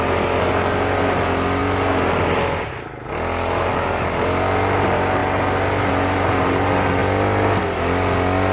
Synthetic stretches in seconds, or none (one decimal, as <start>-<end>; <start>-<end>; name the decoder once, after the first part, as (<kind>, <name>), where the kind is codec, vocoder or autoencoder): none